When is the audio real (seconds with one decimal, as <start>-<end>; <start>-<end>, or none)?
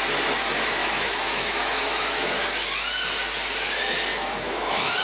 0.0-0.8; 2.4-4.1